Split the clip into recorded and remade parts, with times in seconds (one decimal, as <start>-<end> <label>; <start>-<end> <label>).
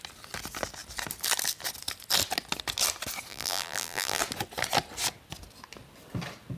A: 0.0-3.3 recorded; 3.3-4.2 remade; 4.2-6.6 recorded